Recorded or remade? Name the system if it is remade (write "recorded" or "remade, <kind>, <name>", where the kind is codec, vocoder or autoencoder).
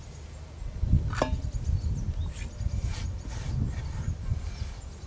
recorded